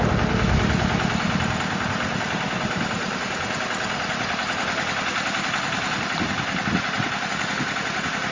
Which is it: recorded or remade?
recorded